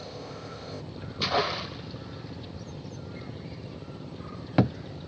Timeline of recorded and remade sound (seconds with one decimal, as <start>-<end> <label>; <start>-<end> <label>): 0.0-0.8 remade; 0.8-5.1 recorded